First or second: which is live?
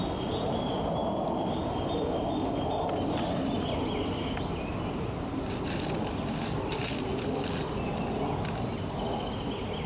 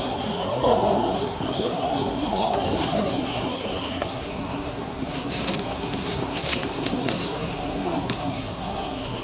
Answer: first